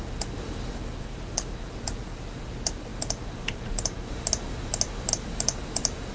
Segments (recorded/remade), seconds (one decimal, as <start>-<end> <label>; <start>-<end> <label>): 0.0-2.9 remade; 2.9-5.1 recorded; 5.1-6.1 remade

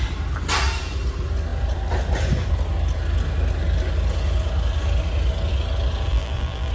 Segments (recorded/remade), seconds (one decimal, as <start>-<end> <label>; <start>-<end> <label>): 0.0-6.1 recorded; 6.1-6.7 remade

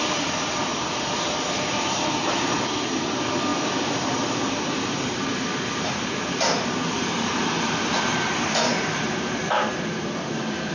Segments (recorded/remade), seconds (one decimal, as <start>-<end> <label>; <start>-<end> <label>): 0.0-10.7 remade